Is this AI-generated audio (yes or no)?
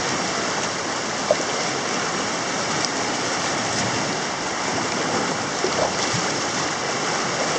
no